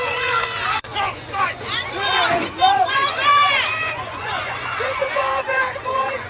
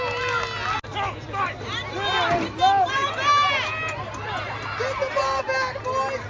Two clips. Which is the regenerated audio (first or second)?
first